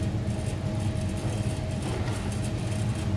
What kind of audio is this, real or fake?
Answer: real